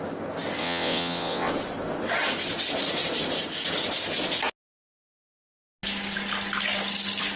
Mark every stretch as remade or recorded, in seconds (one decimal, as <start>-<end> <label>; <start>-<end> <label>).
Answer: 0.0-0.6 recorded; 0.6-1.5 remade; 1.5-7.4 recorded